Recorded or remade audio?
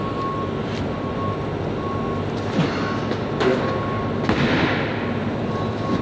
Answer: recorded